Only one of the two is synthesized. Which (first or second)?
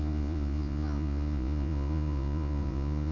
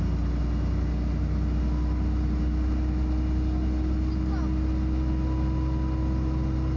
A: first